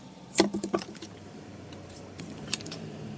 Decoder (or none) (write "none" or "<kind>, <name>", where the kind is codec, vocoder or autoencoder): vocoder, BigVGAN v2